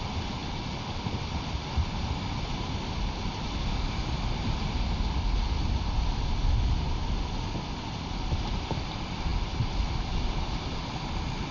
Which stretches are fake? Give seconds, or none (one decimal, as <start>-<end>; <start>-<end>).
none